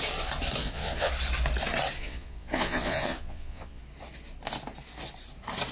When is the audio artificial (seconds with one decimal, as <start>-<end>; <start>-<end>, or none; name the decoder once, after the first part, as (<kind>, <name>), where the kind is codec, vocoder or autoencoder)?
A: 0.6-1.1 (vocoder, Vocos); 2.0-3.8